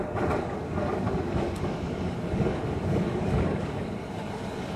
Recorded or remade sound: remade